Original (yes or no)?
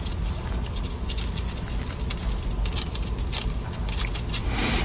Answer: yes